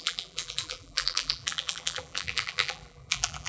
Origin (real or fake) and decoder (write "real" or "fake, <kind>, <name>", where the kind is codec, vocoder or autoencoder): fake, vocoder, BigVGAN v2